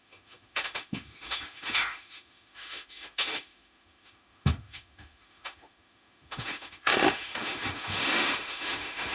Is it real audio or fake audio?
fake